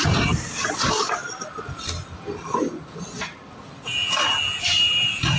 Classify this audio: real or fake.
real